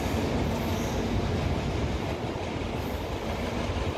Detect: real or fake real